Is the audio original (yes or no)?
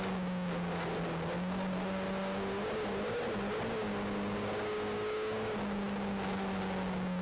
yes